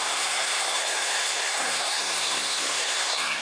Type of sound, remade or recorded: remade